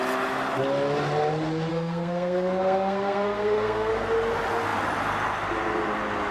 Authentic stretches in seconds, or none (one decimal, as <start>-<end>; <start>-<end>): 0.0-1.7; 3.9-6.3